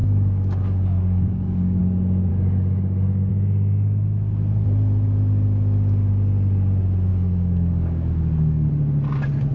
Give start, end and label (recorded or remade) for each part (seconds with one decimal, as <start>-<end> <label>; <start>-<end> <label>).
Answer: 0.0-1.8 remade; 1.8-2.3 recorded; 2.3-3.3 remade; 3.3-7.1 recorded; 7.1-8.7 remade; 8.7-9.5 recorded

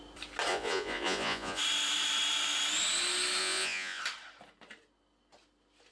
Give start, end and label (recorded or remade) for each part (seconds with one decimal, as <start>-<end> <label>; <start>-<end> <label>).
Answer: 0.0-0.5 recorded; 0.5-1.6 remade; 1.6-3.4 recorded; 3.4-4.0 remade; 4.0-5.9 recorded

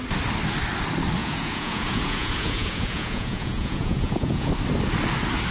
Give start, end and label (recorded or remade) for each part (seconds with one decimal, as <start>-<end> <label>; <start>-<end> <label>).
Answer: 0.0-1.2 recorded; 1.2-4.5 remade; 4.5-5.5 recorded